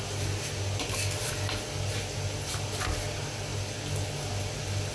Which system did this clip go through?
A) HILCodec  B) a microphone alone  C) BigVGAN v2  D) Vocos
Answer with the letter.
B